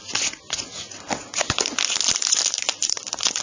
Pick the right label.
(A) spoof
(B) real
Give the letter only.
B